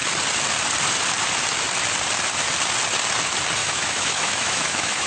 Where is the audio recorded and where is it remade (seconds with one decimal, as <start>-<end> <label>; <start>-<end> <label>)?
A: 0.0-3.6 recorded; 3.6-5.1 remade